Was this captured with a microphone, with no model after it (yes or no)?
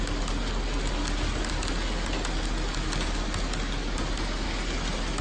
yes